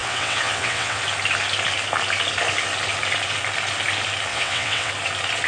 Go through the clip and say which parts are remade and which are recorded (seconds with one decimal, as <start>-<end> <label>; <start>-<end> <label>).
0.0-1.0 remade; 1.0-4.3 recorded; 4.3-4.9 remade; 4.9-5.5 recorded